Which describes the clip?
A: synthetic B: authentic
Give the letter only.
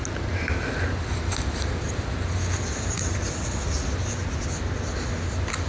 B